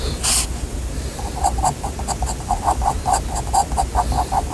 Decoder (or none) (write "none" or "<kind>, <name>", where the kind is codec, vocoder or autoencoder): none